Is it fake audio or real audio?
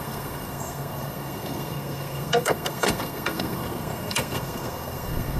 fake